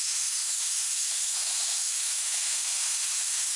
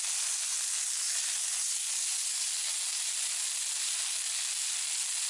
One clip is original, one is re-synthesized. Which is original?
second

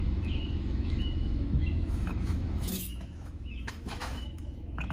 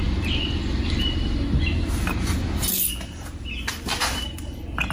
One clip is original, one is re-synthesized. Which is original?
second